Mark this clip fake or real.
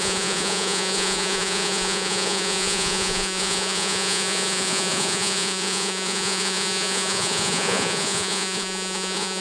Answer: fake